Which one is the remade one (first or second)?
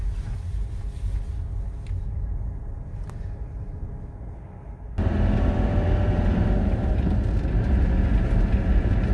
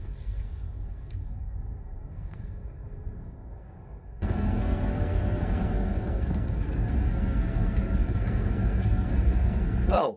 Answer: second